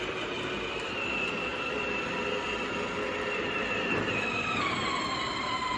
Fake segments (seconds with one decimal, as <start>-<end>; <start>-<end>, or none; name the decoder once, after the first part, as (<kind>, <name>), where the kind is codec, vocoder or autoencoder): 0.0-1.5 (vocoder, BigVGAN v2); 4.1-5.8